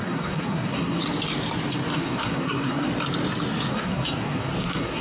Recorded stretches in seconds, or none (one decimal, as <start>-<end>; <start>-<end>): 1.0-1.9; 2.9-3.7